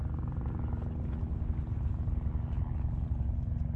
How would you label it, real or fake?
real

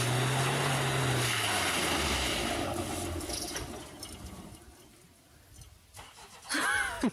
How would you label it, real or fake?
real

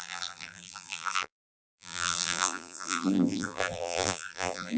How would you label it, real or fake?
fake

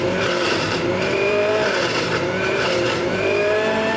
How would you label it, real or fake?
fake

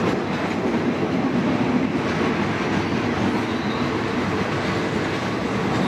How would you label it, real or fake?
real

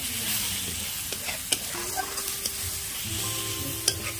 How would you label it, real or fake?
real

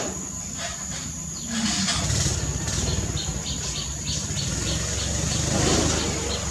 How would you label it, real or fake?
real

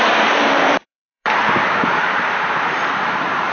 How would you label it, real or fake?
fake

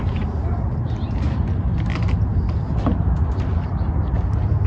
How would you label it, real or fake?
real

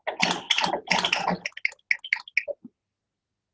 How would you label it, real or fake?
real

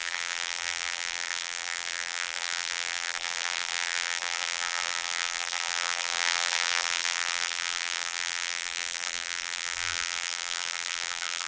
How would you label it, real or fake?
fake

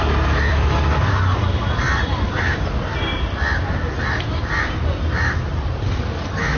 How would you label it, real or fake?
fake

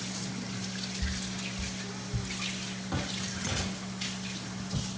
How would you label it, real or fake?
real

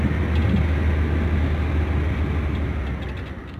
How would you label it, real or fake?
real